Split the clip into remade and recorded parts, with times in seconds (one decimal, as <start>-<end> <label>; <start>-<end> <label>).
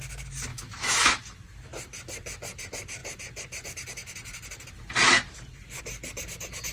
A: 0.0-0.5 recorded; 0.5-1.2 remade; 1.2-6.7 recorded